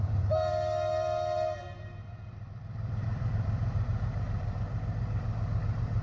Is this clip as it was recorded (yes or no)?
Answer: no